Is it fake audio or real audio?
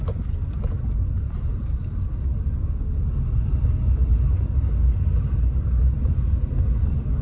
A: real